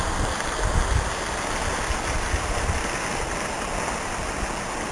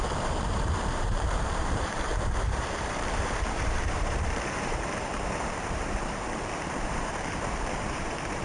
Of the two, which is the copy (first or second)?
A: second